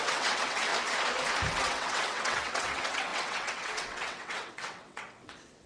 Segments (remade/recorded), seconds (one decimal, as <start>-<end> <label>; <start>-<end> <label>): 0.0-0.7 remade; 0.7-1.5 recorded; 1.5-5.7 remade